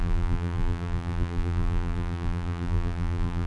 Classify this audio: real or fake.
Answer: fake